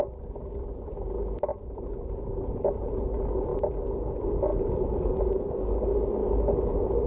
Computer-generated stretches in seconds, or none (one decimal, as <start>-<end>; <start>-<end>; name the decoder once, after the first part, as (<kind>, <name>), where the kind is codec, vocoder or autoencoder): 1.5-3.0 (vocoder, BigVGAN v2); 4.5-5.4